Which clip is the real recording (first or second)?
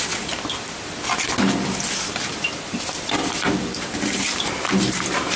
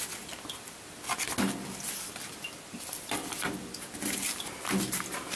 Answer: second